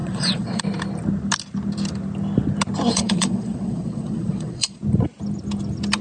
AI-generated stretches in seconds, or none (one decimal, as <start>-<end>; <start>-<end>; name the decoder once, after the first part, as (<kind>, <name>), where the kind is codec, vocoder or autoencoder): 0.0-0.6 (vocoder, Vocos); 2.9-4.8